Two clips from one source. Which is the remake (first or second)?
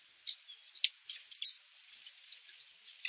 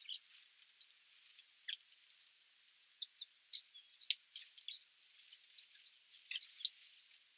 first